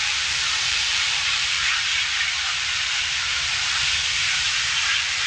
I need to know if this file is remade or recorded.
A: remade